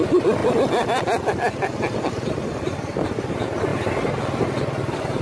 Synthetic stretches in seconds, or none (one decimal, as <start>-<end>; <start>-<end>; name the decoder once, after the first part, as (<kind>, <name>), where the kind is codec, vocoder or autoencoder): none